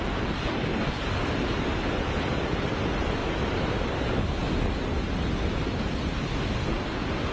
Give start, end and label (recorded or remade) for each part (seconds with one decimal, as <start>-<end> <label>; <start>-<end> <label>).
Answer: 0.0-7.3 recorded